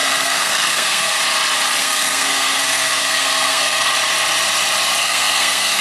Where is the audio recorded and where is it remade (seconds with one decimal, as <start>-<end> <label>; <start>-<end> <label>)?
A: 0.0-1.2 remade; 1.2-1.8 recorded; 1.8-3.9 remade; 3.9-5.0 recorded; 5.0-5.8 remade